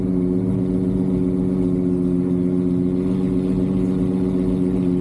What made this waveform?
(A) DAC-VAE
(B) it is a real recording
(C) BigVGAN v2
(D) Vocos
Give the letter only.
B